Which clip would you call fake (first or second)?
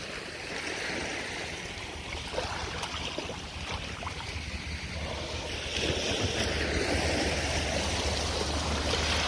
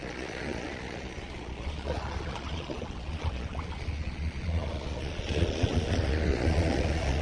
second